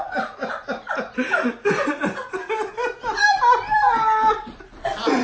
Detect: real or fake real